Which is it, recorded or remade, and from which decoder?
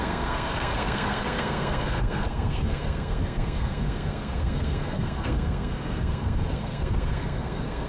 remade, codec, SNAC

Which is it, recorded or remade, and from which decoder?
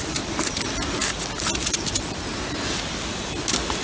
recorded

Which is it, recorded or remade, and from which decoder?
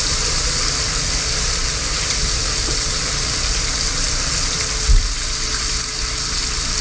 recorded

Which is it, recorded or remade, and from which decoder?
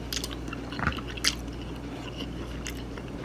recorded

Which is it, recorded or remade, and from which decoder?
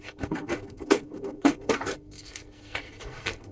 remade, codec, SNAC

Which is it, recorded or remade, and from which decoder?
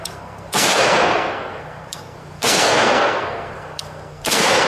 remade, codec, SNAC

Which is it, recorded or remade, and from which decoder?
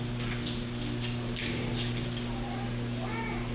recorded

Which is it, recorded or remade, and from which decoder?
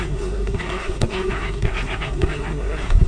remade, codec, SNAC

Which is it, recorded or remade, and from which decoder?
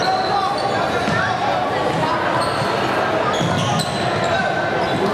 recorded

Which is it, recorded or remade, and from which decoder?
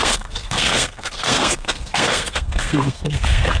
remade, codec, SNAC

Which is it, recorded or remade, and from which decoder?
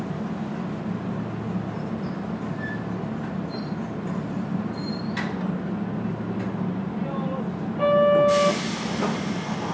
recorded